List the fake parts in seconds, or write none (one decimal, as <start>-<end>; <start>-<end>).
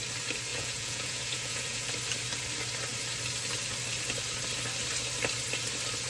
0.5-1.9